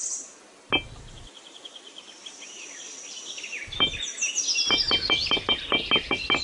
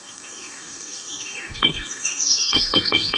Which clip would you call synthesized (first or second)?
second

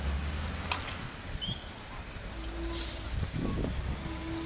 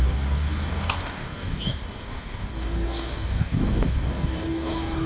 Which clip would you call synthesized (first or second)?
second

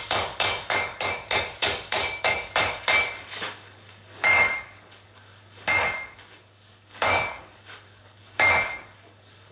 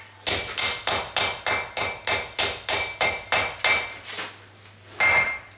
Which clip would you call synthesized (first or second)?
first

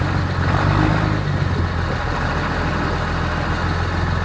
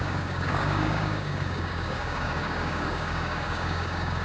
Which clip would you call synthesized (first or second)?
second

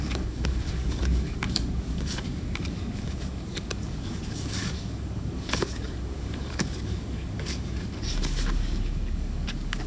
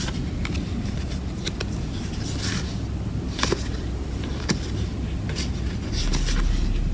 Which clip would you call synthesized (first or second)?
first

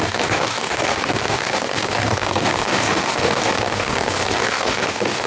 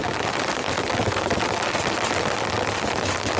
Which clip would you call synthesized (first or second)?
first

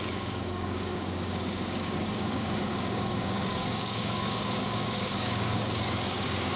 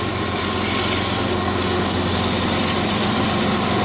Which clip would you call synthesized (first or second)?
first